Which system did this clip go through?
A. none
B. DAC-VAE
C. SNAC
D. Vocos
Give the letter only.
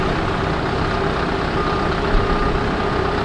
A